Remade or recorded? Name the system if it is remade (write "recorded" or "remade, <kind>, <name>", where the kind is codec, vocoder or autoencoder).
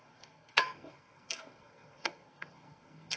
remade, codec, SNAC